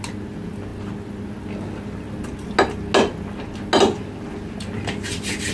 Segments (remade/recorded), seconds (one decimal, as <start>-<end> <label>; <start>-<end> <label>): 0.0-5.5 recorded